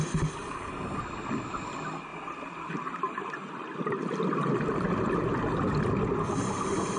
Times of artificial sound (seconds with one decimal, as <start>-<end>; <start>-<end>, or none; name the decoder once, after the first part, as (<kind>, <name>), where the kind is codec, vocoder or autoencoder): 2.1-4.2 (vocoder, BigVGAN v2)

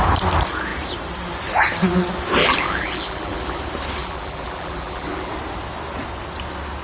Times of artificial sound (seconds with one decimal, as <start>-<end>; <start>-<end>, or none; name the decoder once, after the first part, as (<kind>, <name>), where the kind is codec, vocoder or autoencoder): 2.4-3.6 (vocoder, BigVGAN v2); 4.0-5.3

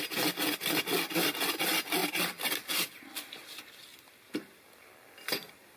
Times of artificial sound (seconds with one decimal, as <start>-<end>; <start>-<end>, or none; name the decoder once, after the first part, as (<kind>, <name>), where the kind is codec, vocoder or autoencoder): none

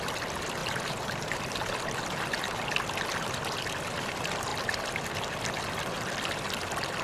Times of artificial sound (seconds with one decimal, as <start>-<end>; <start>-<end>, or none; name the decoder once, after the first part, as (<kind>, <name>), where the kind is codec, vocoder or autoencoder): 0.6-1.4 (vocoder, BigVGAN v2)